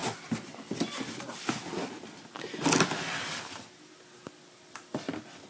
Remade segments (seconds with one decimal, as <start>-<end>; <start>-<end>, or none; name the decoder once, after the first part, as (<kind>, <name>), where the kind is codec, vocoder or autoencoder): none